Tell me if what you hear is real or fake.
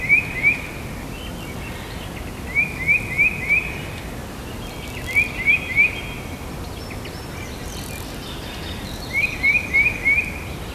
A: real